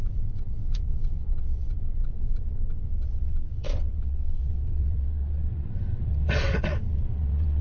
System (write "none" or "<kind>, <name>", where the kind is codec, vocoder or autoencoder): vocoder, WaveNeXt